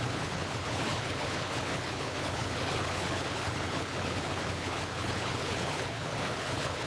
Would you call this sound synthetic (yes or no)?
yes